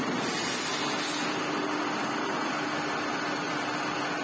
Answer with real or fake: real